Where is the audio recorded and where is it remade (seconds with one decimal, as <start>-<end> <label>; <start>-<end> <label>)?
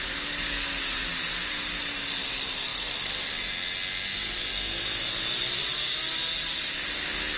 0.0-7.4 recorded